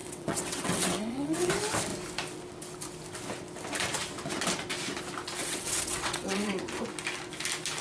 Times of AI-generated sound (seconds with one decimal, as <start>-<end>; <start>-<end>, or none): 0.0-1.5; 5.4-6.6